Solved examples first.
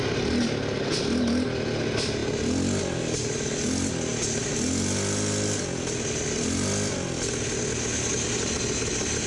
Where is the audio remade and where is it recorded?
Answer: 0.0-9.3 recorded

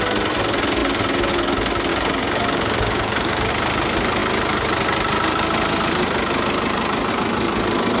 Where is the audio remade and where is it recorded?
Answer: 0.0-1.9 recorded; 1.9-3.5 remade; 3.5-8.0 recorded

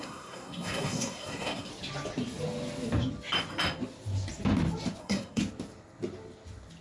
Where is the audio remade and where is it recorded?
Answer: 0.0-1.7 remade; 1.7-5.0 recorded; 5.0-5.4 remade; 5.4-6.8 recorded